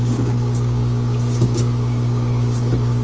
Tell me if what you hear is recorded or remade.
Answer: remade